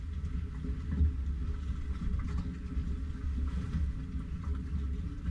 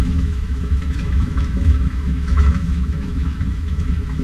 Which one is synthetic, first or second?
second